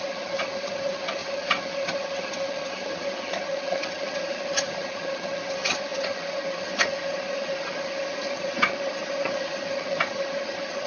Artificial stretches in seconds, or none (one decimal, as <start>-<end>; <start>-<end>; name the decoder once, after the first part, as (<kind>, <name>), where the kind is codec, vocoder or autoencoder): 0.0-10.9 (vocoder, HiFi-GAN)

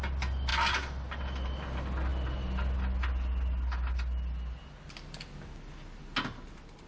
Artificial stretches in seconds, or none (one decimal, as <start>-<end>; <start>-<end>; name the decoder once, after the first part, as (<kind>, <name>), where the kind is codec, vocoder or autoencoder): none

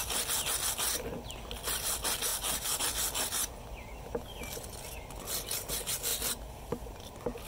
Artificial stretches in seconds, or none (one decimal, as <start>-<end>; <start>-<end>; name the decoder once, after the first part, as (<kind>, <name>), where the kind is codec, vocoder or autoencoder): 2.3-2.8 (vocoder, BigVGAN v2); 6.1-7.5

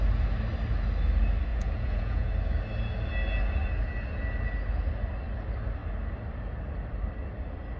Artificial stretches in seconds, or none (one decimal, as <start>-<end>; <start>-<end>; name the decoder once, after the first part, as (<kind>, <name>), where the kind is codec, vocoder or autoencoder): 1.5-2.3 (vocoder, Vocos)

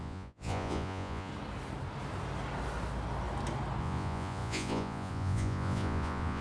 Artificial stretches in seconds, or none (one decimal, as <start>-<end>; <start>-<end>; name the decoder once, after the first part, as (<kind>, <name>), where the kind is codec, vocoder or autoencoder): 0.0-1.3 (vocoder, Vocos); 3.8-6.4

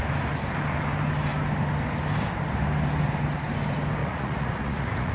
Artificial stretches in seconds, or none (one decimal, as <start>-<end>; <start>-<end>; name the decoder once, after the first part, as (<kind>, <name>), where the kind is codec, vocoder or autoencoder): 4.0-5.1 (vocoder, Vocos)

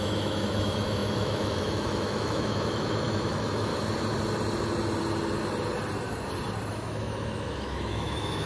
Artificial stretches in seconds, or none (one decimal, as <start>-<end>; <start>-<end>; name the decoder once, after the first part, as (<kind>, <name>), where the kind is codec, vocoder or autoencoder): 0.0-3.7 (autoencoder, DAC-VAE); 6.7-8.5

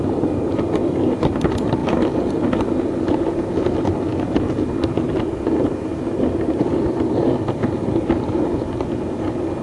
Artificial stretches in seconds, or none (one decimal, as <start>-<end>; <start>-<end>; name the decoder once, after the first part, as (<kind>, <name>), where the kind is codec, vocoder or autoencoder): none